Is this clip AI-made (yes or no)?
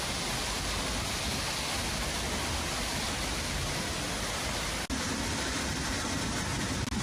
no